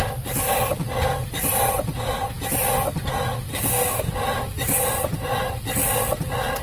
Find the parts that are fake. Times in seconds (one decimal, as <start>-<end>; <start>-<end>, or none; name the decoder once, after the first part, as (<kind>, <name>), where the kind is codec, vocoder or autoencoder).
3.5-4.1 (autoencoder, DAC-VAE)